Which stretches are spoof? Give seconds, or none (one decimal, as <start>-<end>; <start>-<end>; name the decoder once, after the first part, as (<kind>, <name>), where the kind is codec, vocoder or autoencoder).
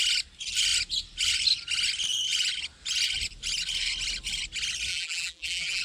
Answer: 4.9-5.8 (vocoder, BigVGAN v2)